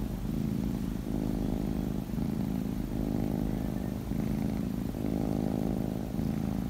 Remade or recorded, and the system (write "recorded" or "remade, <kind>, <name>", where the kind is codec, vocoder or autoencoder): recorded